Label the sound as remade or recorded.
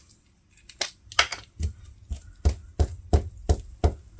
recorded